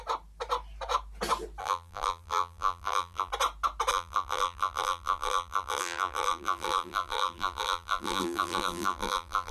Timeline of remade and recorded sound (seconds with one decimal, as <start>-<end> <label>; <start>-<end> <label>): 0.0-1.6 recorded; 1.6-3.3 remade; 3.3-3.9 recorded; 3.9-9.5 remade